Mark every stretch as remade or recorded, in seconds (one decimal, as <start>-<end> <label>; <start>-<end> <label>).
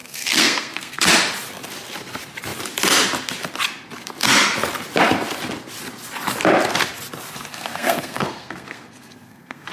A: 0.0-1.0 remade; 1.0-7.5 recorded; 7.5-9.7 remade